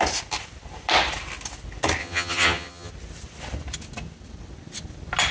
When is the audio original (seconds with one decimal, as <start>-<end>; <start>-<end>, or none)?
0.0-2.0; 2.9-5.3